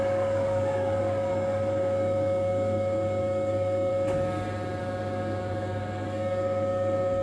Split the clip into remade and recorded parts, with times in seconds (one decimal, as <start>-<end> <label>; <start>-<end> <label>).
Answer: 0.0-3.9 remade; 3.9-4.8 recorded; 4.8-7.2 remade